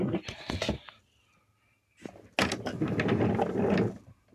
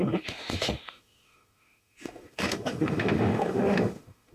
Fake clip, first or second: second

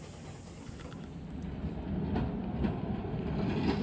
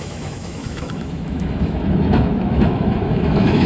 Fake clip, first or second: second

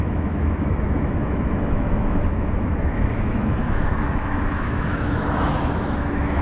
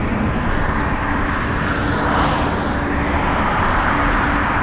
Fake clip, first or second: first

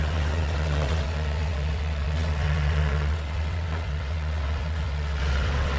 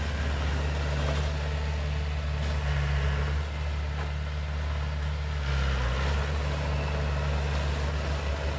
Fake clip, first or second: first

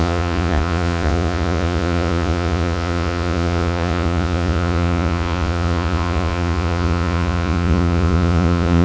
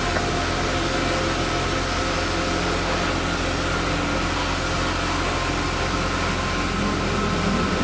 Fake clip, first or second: first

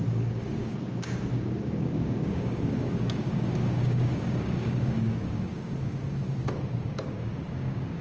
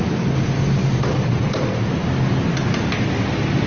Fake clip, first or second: first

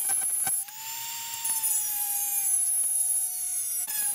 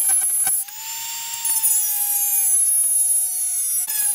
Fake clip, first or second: first